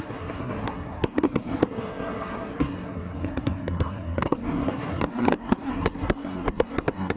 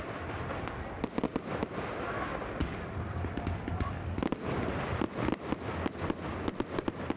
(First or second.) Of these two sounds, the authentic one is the second